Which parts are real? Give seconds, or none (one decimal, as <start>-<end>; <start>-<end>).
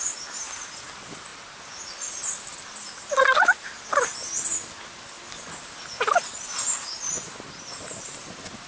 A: 0.0-8.7